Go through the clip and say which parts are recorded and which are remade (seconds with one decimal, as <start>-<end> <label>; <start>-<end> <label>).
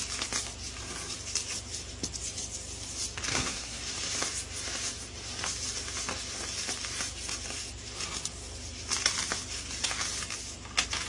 0.0-3.3 recorded; 3.3-3.8 remade; 3.8-11.1 recorded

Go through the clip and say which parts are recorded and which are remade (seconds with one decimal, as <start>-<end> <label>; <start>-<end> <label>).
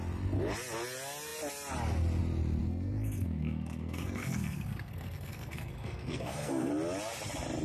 0.0-2.6 recorded; 2.6-6.7 remade; 6.7-7.6 recorded